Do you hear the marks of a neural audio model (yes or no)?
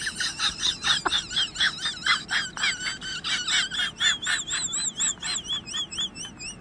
no